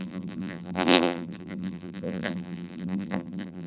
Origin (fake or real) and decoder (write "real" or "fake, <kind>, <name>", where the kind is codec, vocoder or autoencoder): fake, vocoder, BigVGAN v2